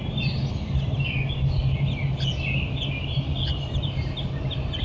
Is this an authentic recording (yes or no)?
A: yes